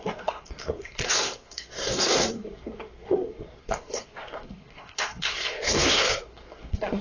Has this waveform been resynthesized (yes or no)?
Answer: yes